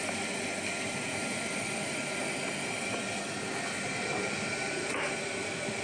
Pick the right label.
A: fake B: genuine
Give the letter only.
B